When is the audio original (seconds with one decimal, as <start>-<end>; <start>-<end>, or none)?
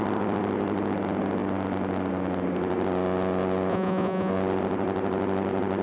0.0-3.7; 4.3-5.8